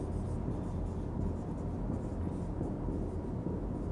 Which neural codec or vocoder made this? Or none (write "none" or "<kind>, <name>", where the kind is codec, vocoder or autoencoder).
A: none